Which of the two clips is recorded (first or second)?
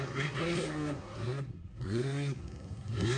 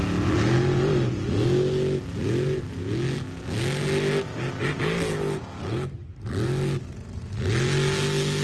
second